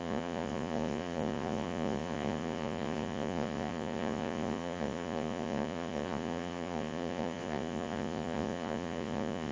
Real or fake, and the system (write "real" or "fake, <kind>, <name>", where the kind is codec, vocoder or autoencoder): fake, vocoder, Vocos